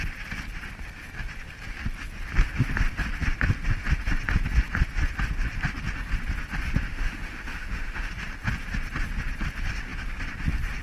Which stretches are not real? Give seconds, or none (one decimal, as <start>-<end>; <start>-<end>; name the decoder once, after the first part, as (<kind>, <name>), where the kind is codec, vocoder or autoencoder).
6.9-8.1 (autoencoder, DAC-VAE)